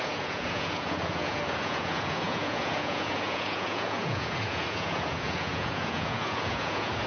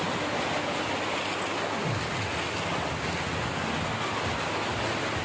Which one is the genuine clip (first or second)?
second